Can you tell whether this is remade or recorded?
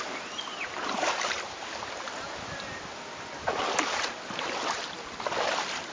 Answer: recorded